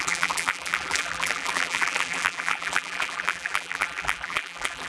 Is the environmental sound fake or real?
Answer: fake